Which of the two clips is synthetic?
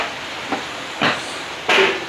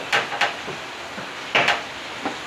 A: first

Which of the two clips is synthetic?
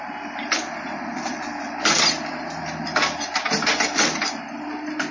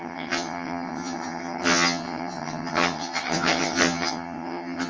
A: second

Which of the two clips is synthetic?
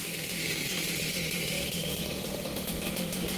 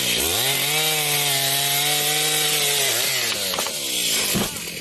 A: first